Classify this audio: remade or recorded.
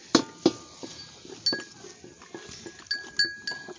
recorded